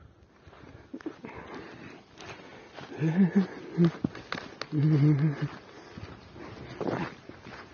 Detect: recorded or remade recorded